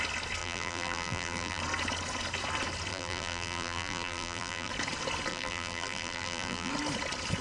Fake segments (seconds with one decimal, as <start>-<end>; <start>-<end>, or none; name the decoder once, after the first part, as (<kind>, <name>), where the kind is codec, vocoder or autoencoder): 0.4-1.6 (vocoder, BigVGAN v2); 2.9-4.7; 5.3-6.7